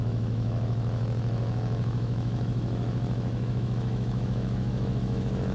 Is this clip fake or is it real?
fake